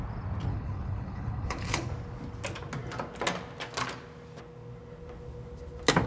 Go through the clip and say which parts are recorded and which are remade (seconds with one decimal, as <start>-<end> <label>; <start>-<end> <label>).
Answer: 0.0-0.5 recorded; 0.5-1.9 remade; 1.9-6.1 recorded

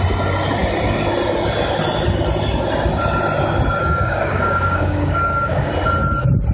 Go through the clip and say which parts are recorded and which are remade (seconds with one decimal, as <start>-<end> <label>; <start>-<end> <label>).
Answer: 0.0-3.8 recorded; 3.8-5.7 remade; 5.7-6.5 recorded